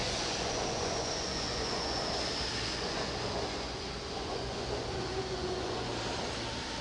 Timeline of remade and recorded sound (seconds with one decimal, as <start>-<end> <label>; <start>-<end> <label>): 0.0-2.0 remade; 2.0-2.7 recorded; 2.7-5.9 remade; 5.9-6.8 recorded